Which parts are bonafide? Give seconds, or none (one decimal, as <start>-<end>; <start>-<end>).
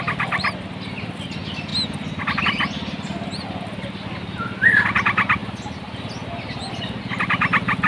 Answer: 0.0-7.9